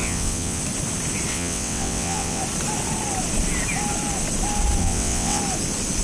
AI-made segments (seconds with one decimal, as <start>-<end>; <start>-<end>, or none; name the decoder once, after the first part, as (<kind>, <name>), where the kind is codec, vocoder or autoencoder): 0.0-0.6 (vocoder, WaveNeXt); 1.3-2.4; 4.8-5.4